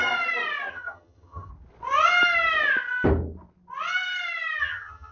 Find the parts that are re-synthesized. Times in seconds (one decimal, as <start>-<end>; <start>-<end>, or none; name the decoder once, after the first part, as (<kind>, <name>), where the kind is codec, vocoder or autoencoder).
0.7-1.5 (vocoder, HiFi-GAN); 4.6-5.1